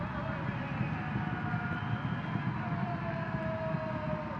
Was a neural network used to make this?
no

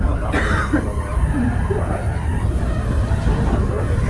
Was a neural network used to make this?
no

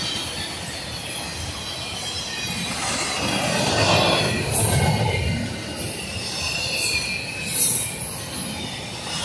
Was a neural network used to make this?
no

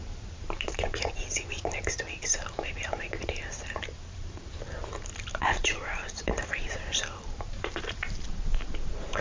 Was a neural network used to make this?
yes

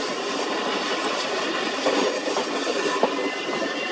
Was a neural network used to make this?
no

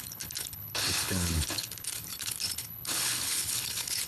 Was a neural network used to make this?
yes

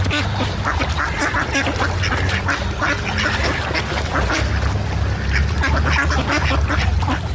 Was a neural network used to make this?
no